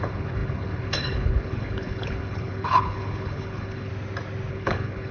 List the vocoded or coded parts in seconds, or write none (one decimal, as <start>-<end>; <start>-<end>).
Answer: 0.0-3.9; 4.5-5.1